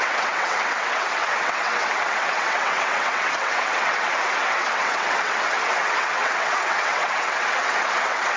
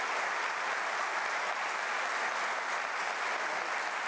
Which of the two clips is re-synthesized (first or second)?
first